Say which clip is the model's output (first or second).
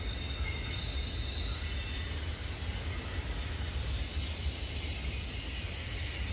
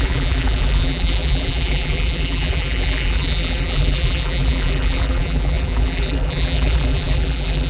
second